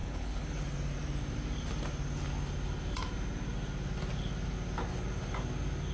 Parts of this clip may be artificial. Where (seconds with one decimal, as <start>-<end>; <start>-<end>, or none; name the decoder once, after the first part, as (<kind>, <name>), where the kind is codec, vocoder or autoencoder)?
0.0-0.6 (codec, HILCodec)